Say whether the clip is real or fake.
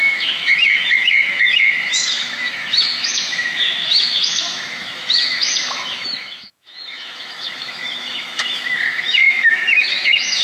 fake